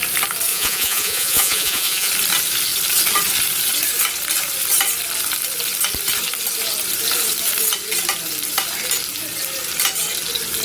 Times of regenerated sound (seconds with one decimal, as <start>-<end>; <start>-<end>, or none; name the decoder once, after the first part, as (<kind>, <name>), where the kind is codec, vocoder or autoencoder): 0.5-2.1 (vocoder, Vocos)